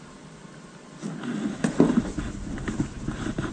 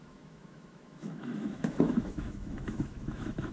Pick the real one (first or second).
first